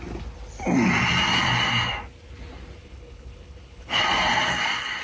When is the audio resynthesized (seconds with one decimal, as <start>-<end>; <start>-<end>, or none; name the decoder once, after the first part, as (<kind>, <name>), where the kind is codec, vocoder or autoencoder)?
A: 2.8-4.0 (codec, HILCodec)